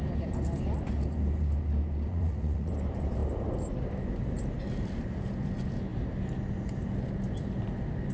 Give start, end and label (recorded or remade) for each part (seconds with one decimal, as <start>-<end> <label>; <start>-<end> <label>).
0.0-2.1 recorded; 2.1-2.7 remade; 2.7-8.1 recorded